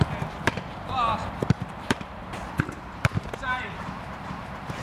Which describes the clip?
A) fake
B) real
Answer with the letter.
A